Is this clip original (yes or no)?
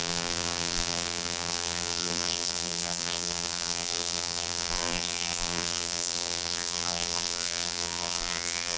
no